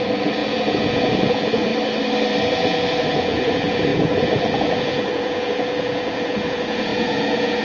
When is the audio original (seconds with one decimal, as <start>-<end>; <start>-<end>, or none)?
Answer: 1.7-2.5

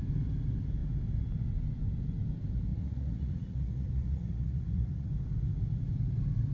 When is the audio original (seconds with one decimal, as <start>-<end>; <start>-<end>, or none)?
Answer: 0.0-2.7; 5.1-6.5

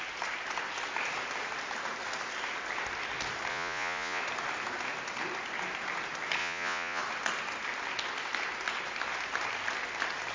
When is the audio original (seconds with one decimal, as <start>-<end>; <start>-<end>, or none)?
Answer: 0.0-3.5; 4.2-6.4; 7.0-10.3

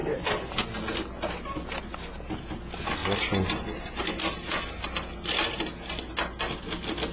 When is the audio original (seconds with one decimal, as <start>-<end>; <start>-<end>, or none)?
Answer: 0.0-7.1

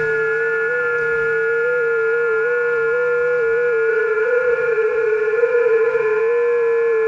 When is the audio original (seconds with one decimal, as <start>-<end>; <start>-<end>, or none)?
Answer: 0.0-3.9; 6.2-7.1